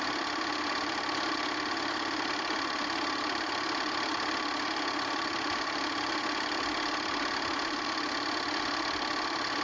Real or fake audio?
real